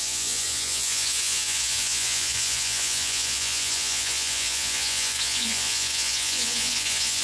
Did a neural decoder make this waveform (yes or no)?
yes